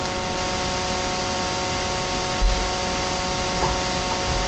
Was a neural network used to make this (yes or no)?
no